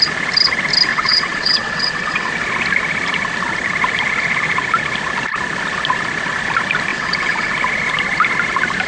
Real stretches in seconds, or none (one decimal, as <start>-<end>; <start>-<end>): 0.0-0.9; 2.3-6.9; 7.5-8.9